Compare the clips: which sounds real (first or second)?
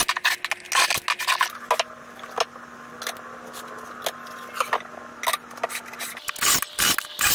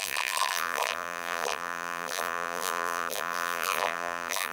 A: first